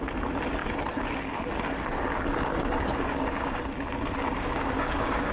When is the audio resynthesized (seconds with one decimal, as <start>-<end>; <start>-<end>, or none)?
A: 2.5-3.6; 4.3-5.3